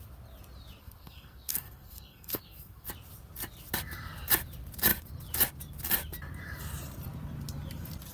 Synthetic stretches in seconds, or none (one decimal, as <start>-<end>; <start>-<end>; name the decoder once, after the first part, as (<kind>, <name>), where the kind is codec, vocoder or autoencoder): 0.8-2.9 (codec, SNAC)